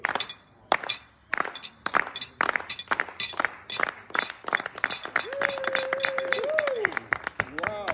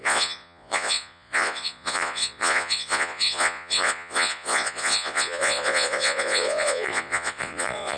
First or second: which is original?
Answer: first